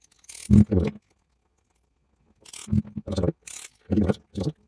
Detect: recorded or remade recorded